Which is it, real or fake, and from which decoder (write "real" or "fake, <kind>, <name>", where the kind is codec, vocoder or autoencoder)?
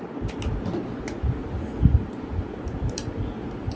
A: real